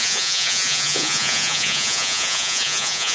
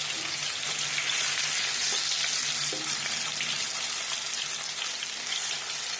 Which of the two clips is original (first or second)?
second